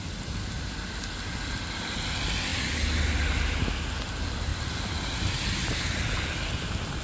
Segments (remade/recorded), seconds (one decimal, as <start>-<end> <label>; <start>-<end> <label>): 0.0-7.0 recorded